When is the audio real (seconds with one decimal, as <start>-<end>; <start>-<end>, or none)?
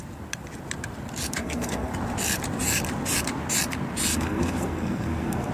0.0-1.4; 1.9-4.1